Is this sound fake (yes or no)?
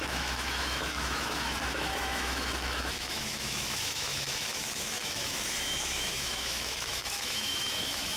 yes